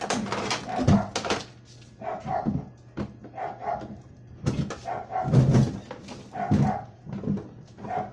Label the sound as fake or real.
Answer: real